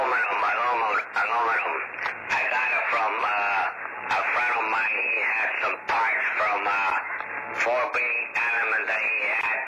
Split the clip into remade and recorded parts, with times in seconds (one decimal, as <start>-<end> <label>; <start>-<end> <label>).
0.0-2.2 recorded; 2.2-3.0 remade; 3.0-9.7 recorded